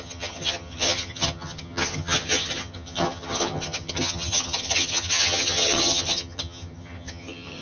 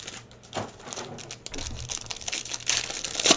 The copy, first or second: first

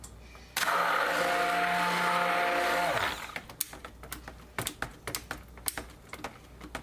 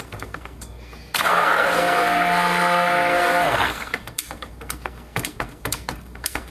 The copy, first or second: second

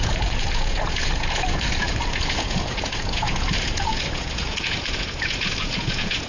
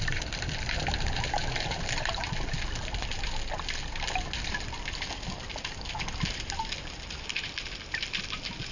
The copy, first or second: first